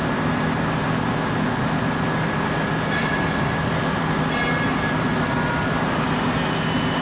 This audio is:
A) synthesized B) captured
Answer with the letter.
B